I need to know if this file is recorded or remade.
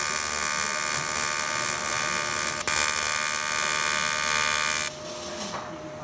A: recorded